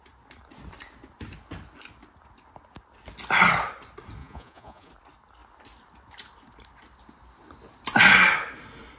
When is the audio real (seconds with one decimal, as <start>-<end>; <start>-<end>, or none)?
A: 0.0-4.2; 4.9-9.0